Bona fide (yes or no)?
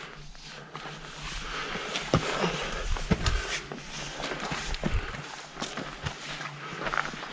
yes